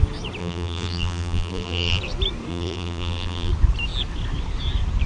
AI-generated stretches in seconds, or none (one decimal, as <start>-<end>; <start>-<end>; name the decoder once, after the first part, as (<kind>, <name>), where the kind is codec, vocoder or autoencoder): 0.4-2.0 (vocoder, BigVGAN v2); 2.5-3.5